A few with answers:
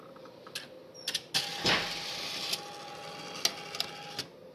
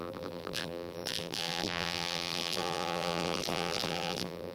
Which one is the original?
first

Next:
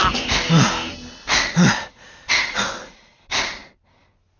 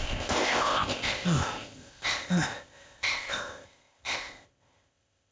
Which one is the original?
first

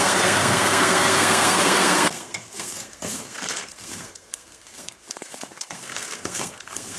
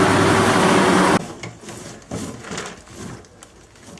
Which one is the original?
second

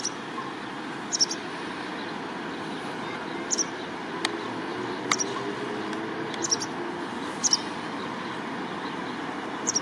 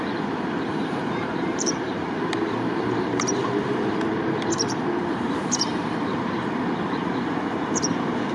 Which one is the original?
first